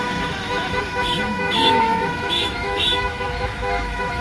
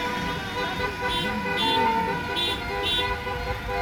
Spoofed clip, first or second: first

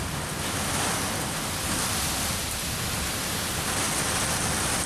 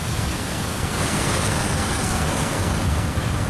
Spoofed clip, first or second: second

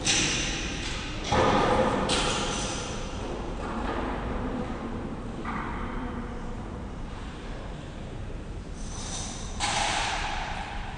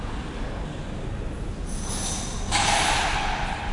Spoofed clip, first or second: first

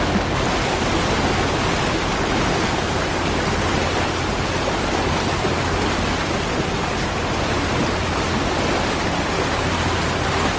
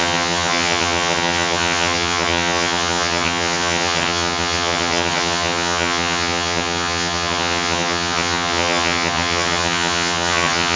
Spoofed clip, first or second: second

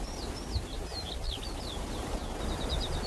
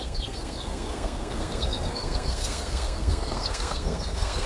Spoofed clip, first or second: second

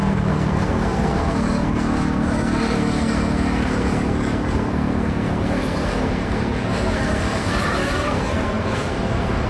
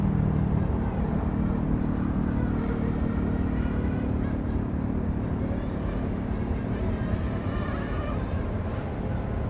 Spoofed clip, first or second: first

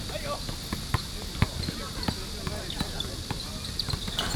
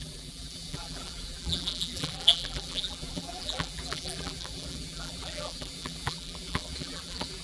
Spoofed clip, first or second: second